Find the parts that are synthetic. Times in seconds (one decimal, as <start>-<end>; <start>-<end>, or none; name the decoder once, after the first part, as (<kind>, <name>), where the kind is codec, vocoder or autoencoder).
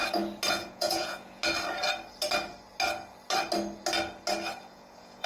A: 0.5-1.4 (vocoder, Vocos); 4.6-5.3